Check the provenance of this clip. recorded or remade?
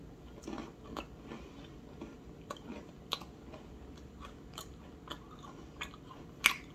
recorded